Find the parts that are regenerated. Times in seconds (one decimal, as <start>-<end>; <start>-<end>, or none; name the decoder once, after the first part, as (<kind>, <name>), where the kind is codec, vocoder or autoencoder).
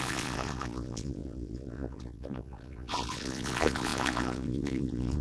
0.0-5.2 (vocoder, Vocos)